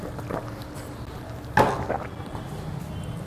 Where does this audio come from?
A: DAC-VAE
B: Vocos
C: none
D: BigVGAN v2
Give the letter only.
C